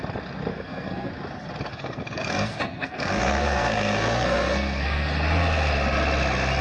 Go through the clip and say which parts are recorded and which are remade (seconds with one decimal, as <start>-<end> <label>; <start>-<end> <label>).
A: 0.0-0.5 recorded; 0.5-1.1 remade; 1.1-1.7 recorded; 1.7-5.1 remade; 5.1-6.6 recorded